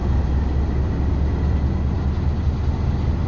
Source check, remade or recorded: recorded